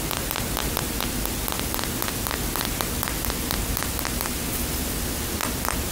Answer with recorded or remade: recorded